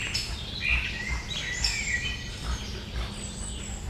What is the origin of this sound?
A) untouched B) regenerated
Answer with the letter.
A